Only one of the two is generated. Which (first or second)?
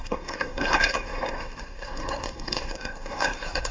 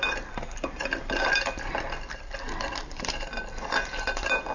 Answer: first